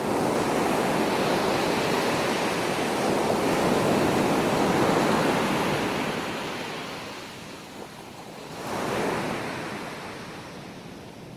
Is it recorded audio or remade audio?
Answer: recorded